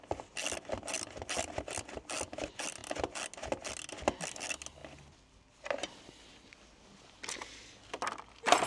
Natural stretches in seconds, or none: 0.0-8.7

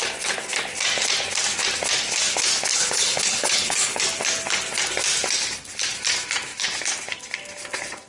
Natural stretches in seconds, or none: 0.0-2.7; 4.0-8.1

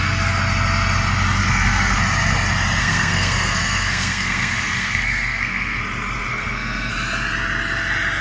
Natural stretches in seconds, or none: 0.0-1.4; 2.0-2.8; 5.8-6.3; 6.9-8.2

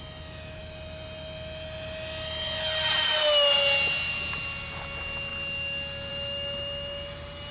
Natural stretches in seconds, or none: 0.0-7.5

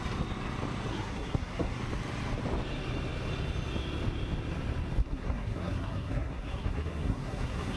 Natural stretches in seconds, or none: 0.0-0.9; 1.8-5.0